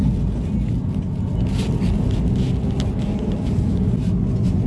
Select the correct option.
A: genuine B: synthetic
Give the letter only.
A